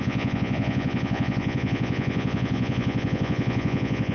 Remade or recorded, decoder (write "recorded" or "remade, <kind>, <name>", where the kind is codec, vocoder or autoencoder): remade, vocoder, Vocos